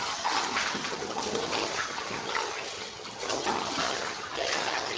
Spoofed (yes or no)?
yes